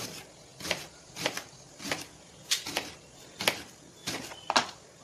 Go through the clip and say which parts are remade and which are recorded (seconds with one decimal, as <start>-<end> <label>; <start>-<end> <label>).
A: 0.0-5.0 recorded